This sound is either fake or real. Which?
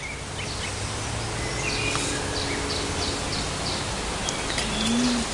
real